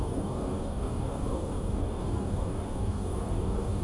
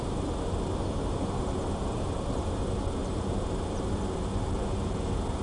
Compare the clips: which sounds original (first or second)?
second